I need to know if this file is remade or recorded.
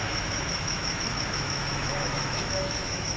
remade